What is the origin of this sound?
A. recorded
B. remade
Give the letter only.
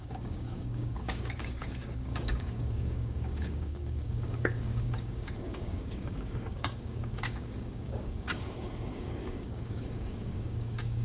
B